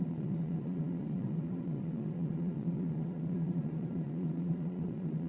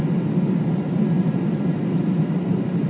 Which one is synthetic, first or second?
first